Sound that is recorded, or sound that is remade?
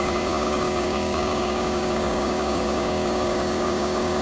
remade